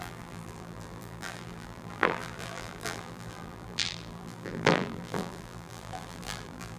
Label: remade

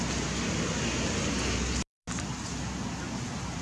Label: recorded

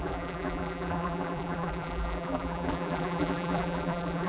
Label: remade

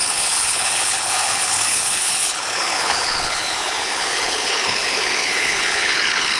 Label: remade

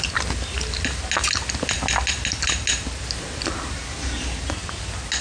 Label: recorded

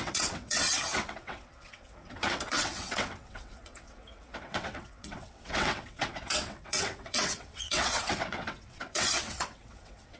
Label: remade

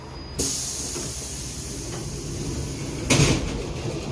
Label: recorded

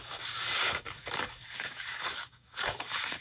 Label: remade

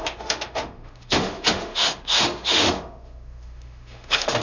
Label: remade